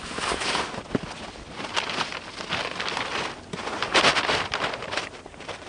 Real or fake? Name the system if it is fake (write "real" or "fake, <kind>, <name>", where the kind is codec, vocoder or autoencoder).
real